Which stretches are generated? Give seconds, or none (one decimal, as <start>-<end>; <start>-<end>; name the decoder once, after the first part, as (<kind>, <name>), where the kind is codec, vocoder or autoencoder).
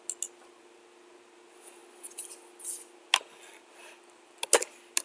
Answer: none